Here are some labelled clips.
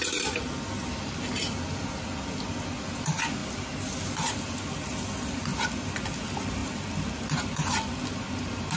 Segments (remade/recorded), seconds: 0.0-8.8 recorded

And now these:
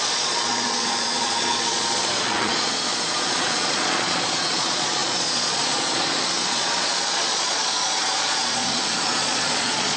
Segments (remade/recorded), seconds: 0.0-10.0 remade

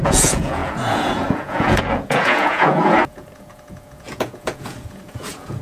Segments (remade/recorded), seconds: 0.0-5.6 remade

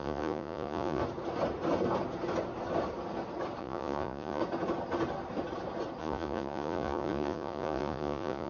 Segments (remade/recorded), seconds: 0.0-1.0 remade; 1.0-3.6 recorded; 3.6-4.4 remade; 4.4-6.0 recorded; 6.0-8.5 remade